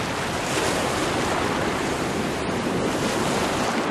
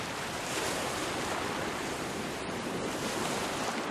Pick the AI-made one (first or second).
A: second